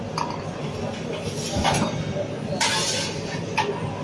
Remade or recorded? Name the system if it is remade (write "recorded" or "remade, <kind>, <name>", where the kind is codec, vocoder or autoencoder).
recorded